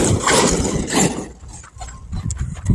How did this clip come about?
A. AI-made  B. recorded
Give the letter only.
B